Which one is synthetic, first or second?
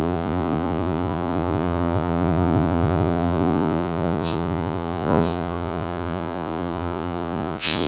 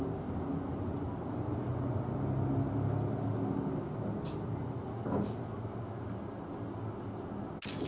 first